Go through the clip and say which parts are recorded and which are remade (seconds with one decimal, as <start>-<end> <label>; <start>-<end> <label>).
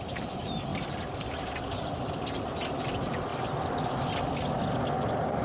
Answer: 0.0-0.7 remade; 0.7-1.4 recorded; 1.4-3.3 remade; 3.3-5.4 recorded